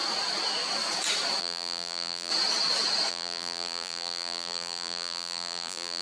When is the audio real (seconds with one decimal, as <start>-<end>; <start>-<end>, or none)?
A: 0.0-1.4; 2.3-3.1